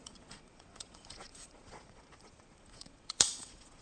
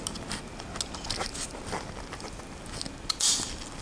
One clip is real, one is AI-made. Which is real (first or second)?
second